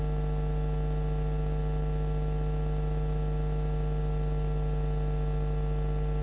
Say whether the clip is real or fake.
real